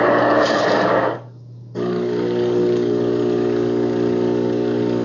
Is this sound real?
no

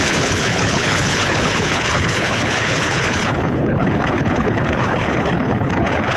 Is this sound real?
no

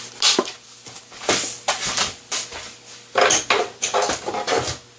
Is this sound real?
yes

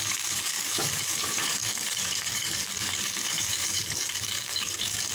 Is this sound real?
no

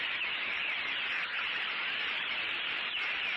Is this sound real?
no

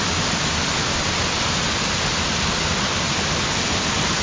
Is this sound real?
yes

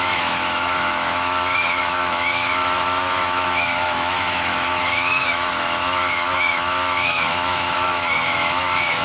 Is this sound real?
no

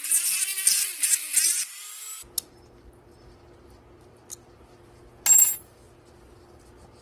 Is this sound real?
yes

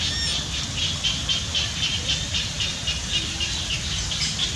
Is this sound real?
yes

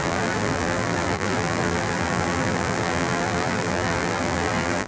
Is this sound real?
no